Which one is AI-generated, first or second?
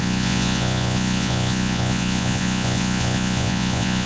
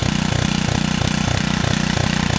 first